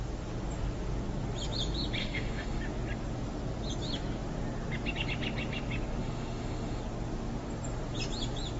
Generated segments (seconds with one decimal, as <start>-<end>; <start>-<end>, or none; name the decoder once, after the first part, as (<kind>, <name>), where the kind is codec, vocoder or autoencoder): 2.0-2.6 (autoencoder, DAC-VAE); 6.0-6.8